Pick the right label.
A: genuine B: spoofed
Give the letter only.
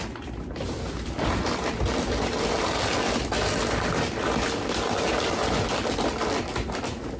A